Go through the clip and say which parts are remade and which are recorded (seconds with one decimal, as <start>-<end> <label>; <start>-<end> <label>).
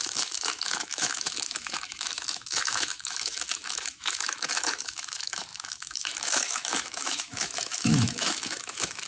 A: 0.0-9.1 remade